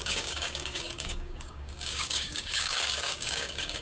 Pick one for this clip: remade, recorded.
remade